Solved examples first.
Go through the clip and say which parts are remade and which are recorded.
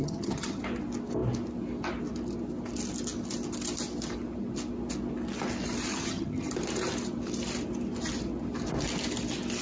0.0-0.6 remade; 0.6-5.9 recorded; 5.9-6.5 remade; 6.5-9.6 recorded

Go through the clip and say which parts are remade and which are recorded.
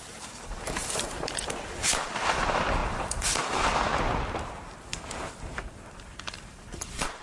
0.0-3.9 remade; 3.9-6.2 recorded; 6.2-7.2 remade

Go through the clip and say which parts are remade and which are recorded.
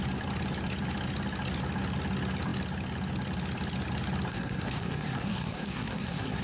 0.0-4.3 recorded; 4.3-6.4 remade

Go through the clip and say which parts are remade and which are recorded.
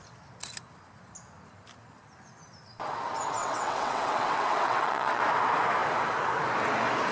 0.0-3.4 recorded; 3.4-5.2 remade; 5.2-7.1 recorded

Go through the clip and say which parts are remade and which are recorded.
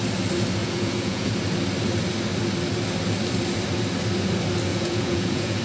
0.0-0.6 recorded; 0.6-1.3 remade; 1.3-4.7 recorded; 4.7-5.6 remade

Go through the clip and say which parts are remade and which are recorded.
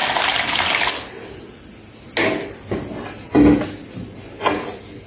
0.0-5.1 recorded